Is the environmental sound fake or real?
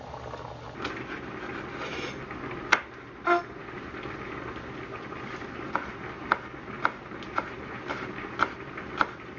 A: real